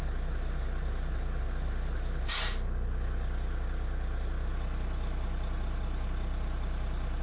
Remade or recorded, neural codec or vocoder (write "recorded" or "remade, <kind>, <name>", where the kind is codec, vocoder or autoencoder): recorded